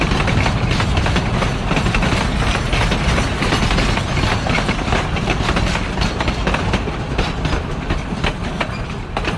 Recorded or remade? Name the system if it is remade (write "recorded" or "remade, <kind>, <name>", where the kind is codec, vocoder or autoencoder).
recorded